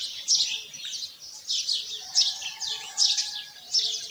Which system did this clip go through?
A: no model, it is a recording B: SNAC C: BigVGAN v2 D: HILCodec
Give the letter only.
A